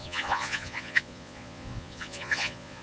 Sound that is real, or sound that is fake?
fake